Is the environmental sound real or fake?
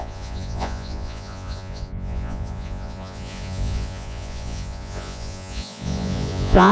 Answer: fake